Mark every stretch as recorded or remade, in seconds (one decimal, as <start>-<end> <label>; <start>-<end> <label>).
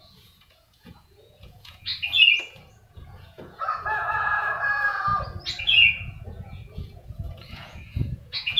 0.0-1.9 remade; 1.9-2.7 recorded; 2.7-5.1 remade; 5.1-5.6 recorded; 5.6-8.6 remade